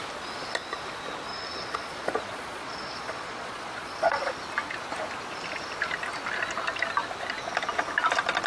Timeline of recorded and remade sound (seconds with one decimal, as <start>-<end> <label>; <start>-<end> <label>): 0.0-1.3 recorded; 1.3-4.3 remade; 4.3-8.5 recorded